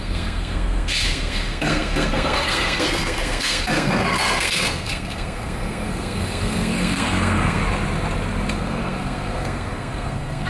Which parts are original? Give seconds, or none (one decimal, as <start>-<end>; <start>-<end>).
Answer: 7.6-8.5

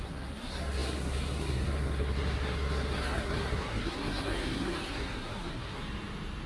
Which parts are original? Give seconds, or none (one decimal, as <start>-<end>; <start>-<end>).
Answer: 5.8-6.5

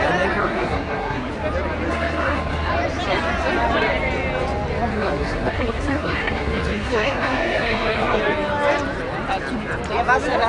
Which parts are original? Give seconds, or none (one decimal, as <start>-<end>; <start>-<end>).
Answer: 0.0-0.4; 1.3-1.9; 2.7-4.9; 8.2-10.5

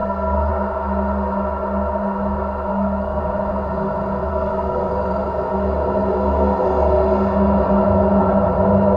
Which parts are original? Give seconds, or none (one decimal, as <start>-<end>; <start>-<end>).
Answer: 0.5-2.7; 3.2-4.3; 4.9-9.0